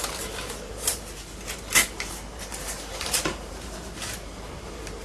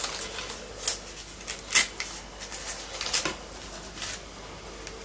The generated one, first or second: first